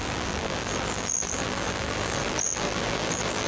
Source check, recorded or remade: remade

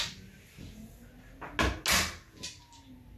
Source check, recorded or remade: recorded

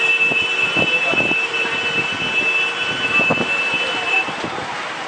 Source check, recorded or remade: remade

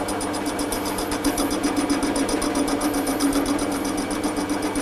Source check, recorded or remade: remade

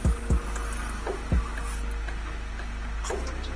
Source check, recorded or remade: recorded